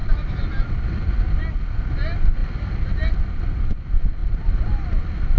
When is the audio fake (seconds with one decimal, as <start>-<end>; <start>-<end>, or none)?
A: none